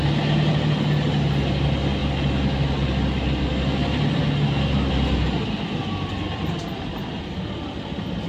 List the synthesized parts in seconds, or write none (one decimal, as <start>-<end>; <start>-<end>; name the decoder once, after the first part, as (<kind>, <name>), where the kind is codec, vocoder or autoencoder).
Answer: none